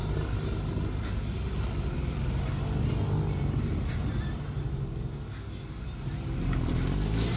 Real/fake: real